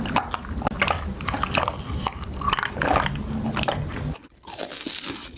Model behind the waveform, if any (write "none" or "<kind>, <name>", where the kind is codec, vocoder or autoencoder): none